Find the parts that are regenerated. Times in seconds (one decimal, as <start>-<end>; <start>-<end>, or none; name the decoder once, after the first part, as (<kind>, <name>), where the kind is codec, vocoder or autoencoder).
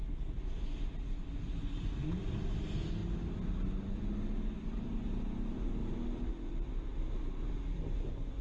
none